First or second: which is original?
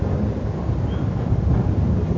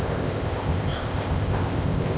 first